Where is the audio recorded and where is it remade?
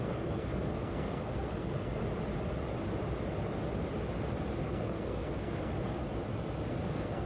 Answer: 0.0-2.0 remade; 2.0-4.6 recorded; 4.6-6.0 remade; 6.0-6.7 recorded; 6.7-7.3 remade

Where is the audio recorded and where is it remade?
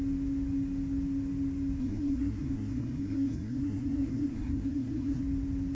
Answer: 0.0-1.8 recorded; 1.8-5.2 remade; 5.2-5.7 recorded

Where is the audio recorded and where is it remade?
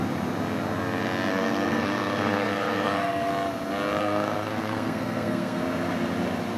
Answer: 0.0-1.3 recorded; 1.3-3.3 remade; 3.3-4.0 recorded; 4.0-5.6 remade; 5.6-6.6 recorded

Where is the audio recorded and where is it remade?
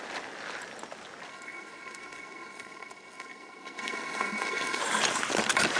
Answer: 0.0-1.3 recorded; 1.3-4.8 remade; 4.8-5.8 recorded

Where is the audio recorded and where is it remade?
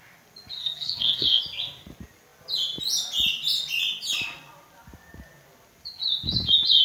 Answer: 0.0-0.6 recorded; 0.6-1.4 remade; 1.4-6.8 recorded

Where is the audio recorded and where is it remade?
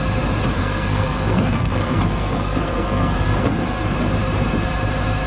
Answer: 0.0-0.6 recorded; 0.6-3.8 remade; 3.8-5.3 recorded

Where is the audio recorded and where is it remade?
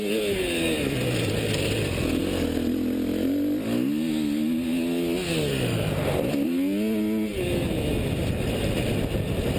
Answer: 0.0-9.6 recorded